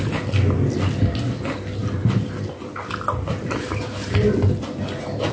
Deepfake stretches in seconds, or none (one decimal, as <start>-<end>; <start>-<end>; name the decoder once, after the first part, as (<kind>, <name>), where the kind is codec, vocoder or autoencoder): none